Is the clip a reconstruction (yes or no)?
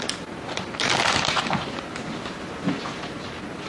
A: no